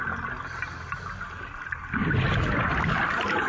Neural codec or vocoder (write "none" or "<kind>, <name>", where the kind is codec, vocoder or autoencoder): none